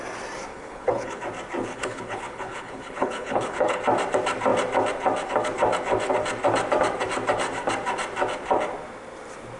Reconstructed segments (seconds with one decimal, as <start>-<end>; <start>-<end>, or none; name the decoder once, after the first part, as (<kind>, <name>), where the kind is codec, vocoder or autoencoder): 0.5-1.2 (codec, HILCodec); 1.6-3.8